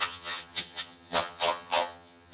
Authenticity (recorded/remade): remade